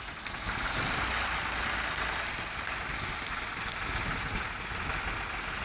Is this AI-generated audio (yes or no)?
no